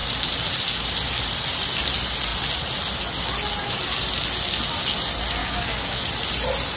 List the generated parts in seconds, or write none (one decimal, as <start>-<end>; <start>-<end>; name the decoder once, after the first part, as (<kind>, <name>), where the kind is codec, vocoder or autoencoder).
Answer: 5.4-6.0 (codec, DAC)